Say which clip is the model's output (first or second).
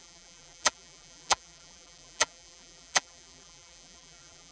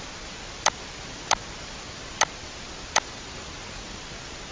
first